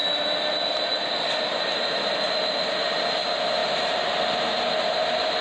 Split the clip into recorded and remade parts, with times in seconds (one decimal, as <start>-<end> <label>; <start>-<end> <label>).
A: 0.0-5.4 recorded